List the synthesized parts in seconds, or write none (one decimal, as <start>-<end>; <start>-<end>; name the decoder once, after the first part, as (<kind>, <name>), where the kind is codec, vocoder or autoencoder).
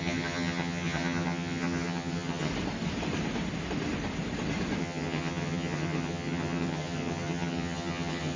0.0-2.5 (vocoder, HiFi-GAN); 4.8-8.4